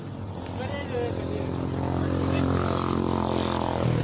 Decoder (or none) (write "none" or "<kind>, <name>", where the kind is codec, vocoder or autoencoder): none